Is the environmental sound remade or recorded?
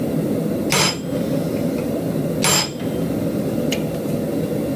recorded